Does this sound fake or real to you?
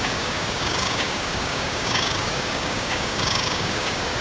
fake